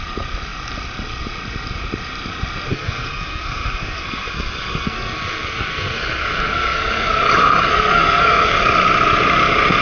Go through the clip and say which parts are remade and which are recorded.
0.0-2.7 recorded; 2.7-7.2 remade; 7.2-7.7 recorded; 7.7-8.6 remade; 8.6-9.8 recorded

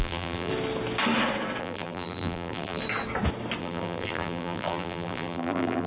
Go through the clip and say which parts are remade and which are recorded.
0.0-0.5 remade; 0.5-1.6 recorded; 1.6-2.8 remade; 2.8-3.6 recorded; 3.6-5.9 remade